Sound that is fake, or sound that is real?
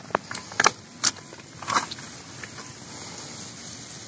real